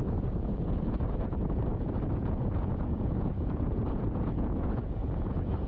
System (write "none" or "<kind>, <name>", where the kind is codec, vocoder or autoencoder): vocoder, Vocos